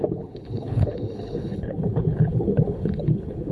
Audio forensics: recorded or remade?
remade